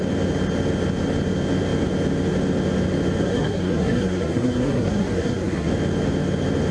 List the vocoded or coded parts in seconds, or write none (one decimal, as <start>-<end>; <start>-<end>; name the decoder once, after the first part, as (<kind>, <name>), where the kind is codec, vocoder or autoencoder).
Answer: 3.2-5.7 (codec, SNAC)